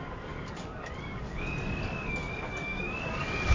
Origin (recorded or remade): remade